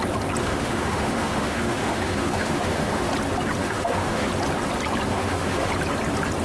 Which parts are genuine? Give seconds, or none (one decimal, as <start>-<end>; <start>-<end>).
0.0-0.4; 3.1-3.6; 4.3-5.1; 5.7-6.4